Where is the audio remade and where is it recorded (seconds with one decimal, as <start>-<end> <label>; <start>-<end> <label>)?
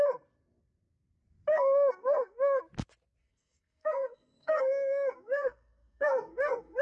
0.0-1.5 recorded; 1.5-2.6 remade; 2.6-3.2 recorded; 3.2-6.8 remade